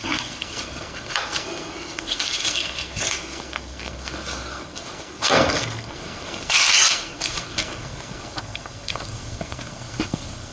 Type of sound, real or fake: fake